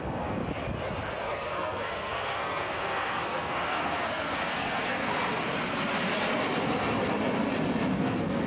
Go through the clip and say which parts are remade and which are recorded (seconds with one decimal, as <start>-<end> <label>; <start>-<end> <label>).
0.0-0.4 remade; 0.4-1.2 recorded; 1.2-5.1 remade; 5.1-8.0 recorded; 8.0-8.5 remade